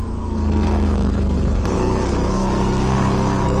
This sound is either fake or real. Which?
fake